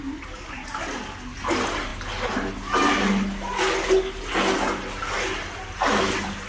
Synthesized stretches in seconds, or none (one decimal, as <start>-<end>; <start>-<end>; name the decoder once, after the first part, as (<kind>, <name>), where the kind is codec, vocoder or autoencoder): none